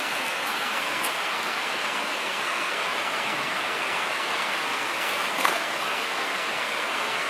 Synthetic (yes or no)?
yes